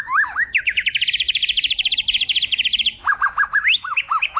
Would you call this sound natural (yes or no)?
no